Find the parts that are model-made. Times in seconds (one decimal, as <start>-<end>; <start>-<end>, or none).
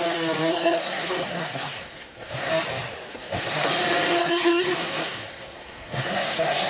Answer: 0.5-2.5; 3.1-3.7; 4.2-6.7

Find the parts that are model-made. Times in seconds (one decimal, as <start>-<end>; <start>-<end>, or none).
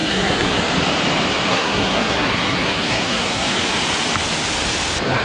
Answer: 0.0-0.6; 1.5-3.6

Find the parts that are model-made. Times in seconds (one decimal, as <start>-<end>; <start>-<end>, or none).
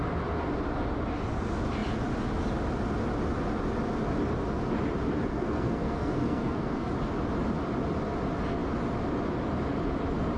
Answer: 5.3-6.9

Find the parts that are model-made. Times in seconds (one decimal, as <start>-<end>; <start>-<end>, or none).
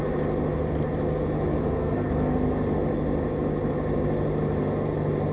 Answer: 1.6-2.1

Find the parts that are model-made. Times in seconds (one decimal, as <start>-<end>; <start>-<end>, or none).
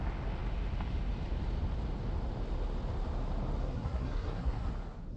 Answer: 3.6-4.7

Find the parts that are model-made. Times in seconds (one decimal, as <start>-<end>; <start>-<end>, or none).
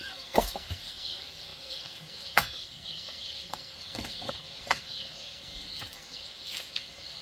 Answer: 0.0-7.2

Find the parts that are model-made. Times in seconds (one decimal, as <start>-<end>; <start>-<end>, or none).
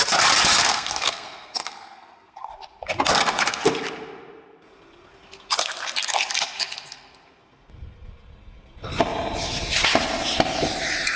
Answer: 0.6-2.5